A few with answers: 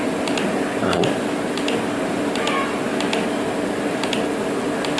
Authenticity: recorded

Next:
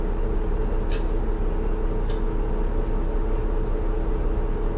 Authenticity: recorded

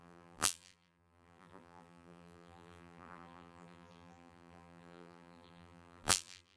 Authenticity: remade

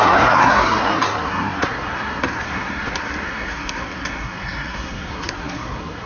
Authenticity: remade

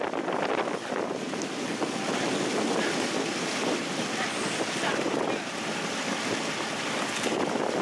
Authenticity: recorded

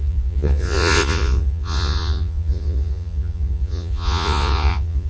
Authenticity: remade